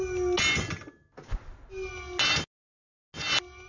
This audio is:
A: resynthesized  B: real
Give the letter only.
B